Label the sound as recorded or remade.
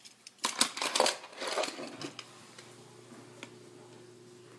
recorded